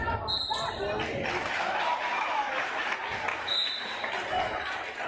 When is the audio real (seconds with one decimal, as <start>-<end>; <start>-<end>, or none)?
0.0-1.4; 2.8-3.3; 4.1-5.1